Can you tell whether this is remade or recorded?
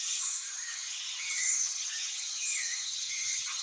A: remade